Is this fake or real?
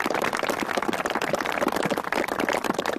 real